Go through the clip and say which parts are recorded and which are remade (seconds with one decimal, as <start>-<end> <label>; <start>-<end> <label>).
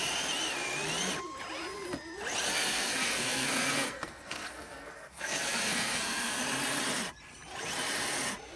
0.0-2.5 recorded; 2.5-6.4 remade; 6.4-8.6 recorded